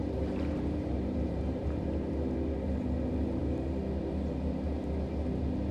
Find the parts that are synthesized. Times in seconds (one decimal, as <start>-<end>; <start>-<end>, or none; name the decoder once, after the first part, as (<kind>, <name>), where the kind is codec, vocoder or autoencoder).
0.0-1.8 (vocoder, BigVGAN v2)